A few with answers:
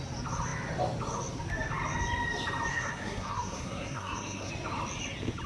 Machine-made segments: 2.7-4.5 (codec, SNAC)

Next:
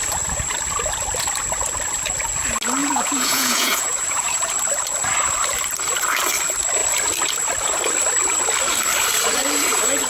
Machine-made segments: 2.8-4.5 (vocoder, Vocos)

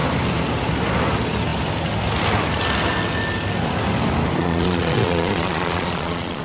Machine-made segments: 4.4-6.4 (vocoder, Vocos)

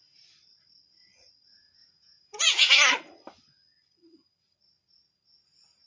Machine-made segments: 1.5-2.7 (vocoder, Vocos)

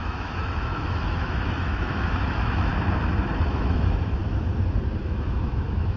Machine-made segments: 0.0-2.7 (autoencoder, DAC-VAE); 3.5-4.2; 5.0-6.0

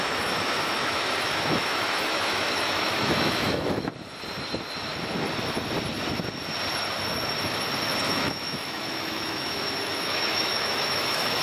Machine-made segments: 0.0-3.9 (autoencoder, DAC-VAE); 8.1-11.4

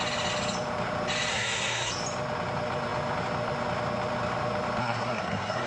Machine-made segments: 1.3-1.9 (codec, SNAC); 4.8-5.7

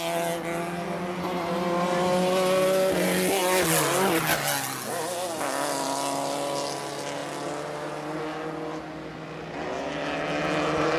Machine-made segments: none